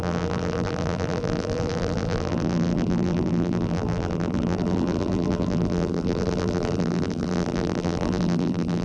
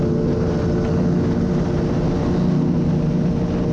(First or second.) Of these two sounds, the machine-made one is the first